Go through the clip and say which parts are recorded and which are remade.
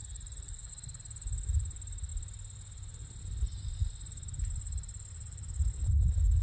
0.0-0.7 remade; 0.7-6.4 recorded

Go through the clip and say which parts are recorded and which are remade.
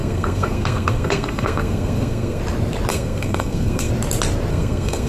0.0-2.4 remade; 2.4-2.9 recorded; 2.9-3.9 remade; 3.9-4.5 recorded; 4.5-5.1 remade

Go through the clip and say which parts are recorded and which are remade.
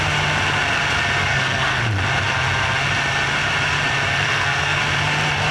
0.0-1.3 recorded; 1.3-1.8 remade; 1.8-4.1 recorded; 4.1-4.8 remade; 4.8-5.5 recorded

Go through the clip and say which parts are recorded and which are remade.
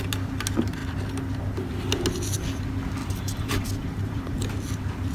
0.0-3.0 recorded; 3.0-4.3 remade; 4.3-5.1 recorded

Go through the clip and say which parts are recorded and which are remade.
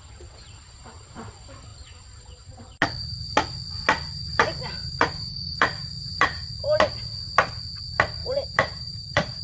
0.0-4.8 recorded; 4.8-6.5 remade; 6.5-8.2 recorded; 8.2-9.4 remade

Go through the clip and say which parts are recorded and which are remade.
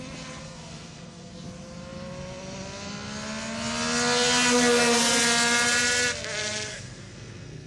0.0-0.4 recorded; 0.4-1.3 remade; 1.3-6.7 recorded; 6.7-7.7 remade